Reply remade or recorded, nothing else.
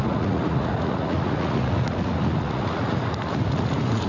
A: remade